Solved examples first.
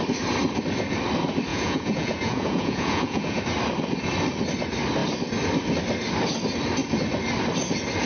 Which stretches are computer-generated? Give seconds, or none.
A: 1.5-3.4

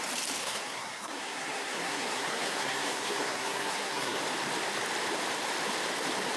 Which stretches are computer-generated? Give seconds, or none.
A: 0.4-4.2